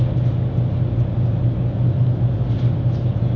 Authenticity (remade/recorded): recorded